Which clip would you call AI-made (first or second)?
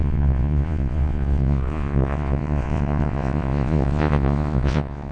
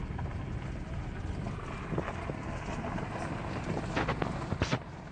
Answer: first